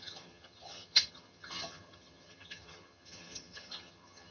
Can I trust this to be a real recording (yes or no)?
no